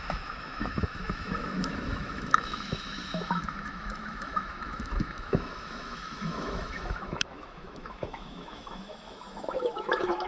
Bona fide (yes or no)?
no